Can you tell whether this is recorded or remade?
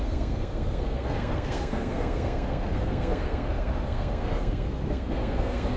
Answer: remade